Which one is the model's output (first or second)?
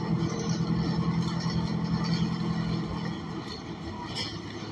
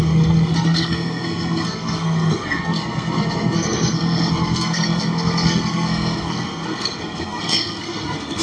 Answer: second